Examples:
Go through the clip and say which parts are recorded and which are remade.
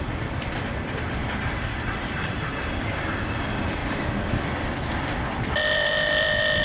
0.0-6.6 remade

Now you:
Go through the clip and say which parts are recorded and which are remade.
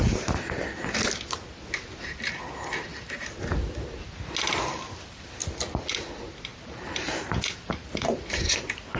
0.0-6.5 recorded; 6.5-8.6 remade; 8.6-9.0 recorded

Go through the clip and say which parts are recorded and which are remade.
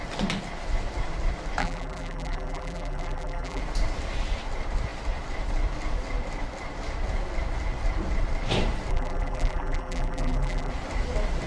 0.0-1.6 recorded; 1.6-3.6 remade; 3.6-8.9 recorded; 8.9-10.7 remade; 10.7-11.5 recorded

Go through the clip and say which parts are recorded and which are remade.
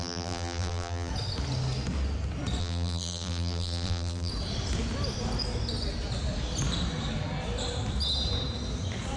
0.0-1.1 remade; 1.1-2.6 recorded; 2.6-4.3 remade; 4.3-9.2 recorded